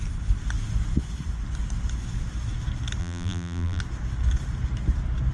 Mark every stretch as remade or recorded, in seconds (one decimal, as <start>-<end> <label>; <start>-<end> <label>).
0.0-3.0 recorded; 3.0-3.8 remade; 3.8-5.3 recorded